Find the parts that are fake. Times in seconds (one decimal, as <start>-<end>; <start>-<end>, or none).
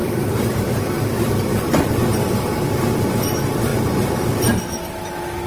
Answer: 0.0-3.3